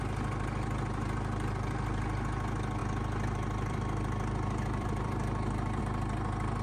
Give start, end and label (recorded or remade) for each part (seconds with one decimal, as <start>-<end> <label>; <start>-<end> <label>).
0.0-2.8 recorded; 2.8-5.8 remade; 5.8-6.6 recorded